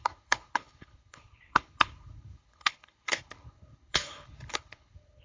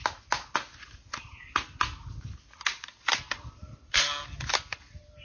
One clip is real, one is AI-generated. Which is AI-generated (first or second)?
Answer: first